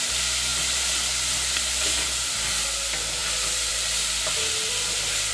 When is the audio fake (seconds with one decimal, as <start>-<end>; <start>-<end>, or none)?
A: none